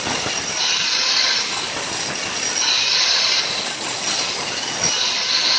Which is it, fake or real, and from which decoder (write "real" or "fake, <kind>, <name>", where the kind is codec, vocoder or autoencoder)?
real